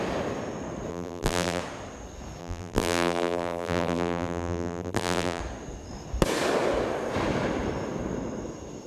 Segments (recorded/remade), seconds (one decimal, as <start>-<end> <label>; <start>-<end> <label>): 0.0-0.9 recorded; 0.9-1.6 remade; 1.6-2.4 recorded; 2.4-5.4 remade; 5.4-8.9 recorded